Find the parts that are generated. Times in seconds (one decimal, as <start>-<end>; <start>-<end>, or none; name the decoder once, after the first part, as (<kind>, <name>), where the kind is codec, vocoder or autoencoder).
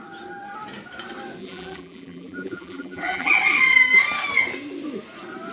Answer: 1.4-3.3 (vocoder, BigVGAN v2)